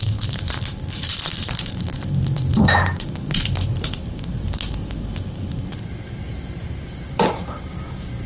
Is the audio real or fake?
fake